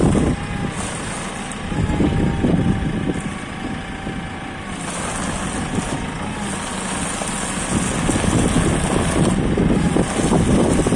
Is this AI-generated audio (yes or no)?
no